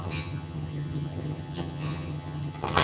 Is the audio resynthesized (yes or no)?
yes